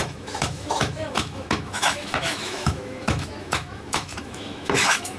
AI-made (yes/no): yes